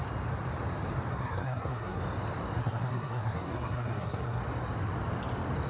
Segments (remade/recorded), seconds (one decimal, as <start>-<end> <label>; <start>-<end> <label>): 0.0-1.1 recorded; 1.1-2.0 remade; 2.0-2.6 recorded; 2.6-4.4 remade; 4.4-5.7 recorded